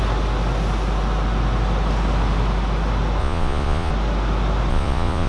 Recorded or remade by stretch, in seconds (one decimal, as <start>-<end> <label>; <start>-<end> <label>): 0.0-3.2 recorded; 3.2-3.9 remade; 3.9-4.7 recorded; 4.7-5.3 remade